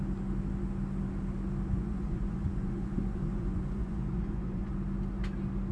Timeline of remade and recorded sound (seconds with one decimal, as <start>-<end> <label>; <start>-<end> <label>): 0.0-1.7 recorded; 1.7-4.7 remade; 4.7-5.7 recorded

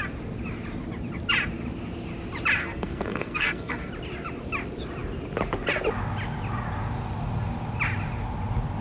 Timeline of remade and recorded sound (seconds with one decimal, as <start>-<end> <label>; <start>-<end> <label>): 0.0-2.6 recorded; 2.6-3.9 remade; 3.9-8.8 recorded

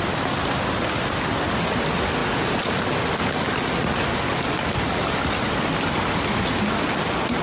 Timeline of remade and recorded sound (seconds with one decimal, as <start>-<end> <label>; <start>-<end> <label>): 0.0-7.4 recorded

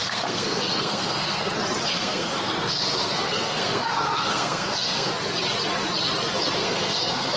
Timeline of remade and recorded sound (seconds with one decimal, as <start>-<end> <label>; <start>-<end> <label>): 0.0-1.5 remade; 1.5-1.9 recorded; 1.9-5.1 remade; 5.1-6.6 recorded; 6.6-7.4 remade

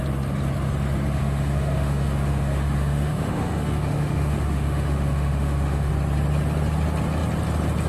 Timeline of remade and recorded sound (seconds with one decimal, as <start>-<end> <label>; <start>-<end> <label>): 0.0-1.2 recorded; 1.2-5.9 remade; 5.9-7.9 recorded

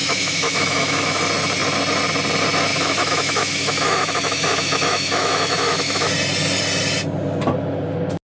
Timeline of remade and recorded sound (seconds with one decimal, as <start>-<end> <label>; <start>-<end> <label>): 0.0-1.2 remade; 1.2-2.7 recorded; 2.7-6.1 remade; 6.1-8.3 recorded

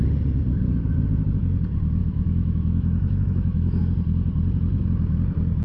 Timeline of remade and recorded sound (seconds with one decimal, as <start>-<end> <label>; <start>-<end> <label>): 0.0-2.0 recorded; 2.0-3.8 remade; 3.8-5.6 recorded